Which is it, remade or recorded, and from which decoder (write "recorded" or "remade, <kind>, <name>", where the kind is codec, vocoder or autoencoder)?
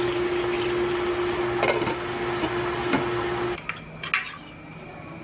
recorded